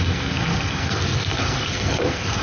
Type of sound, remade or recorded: remade